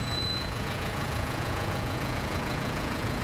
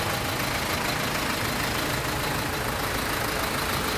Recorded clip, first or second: second